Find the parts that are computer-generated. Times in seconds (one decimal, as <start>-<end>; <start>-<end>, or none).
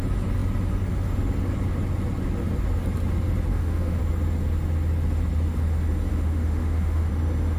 3.5-4.0; 6.1-7.1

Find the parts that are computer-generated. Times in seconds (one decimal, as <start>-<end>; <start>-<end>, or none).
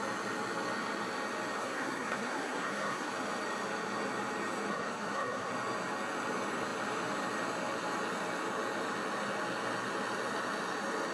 1.6-3.1; 4.7-5.5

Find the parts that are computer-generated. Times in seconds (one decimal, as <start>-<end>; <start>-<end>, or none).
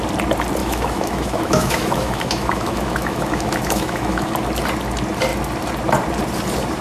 0.6-4.3